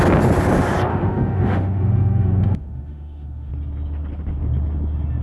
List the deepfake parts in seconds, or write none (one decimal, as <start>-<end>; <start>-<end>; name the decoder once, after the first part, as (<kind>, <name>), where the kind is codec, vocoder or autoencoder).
0.9-3.5 (autoencoder, DAC-VAE)